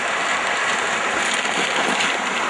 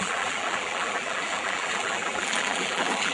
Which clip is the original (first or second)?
first